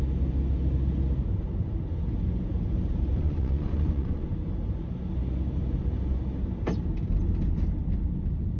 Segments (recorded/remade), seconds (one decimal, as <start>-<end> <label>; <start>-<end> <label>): 0.0-3.2 recorded; 3.2-4.3 remade; 4.3-8.6 recorded